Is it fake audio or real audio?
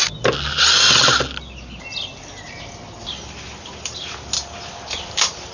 real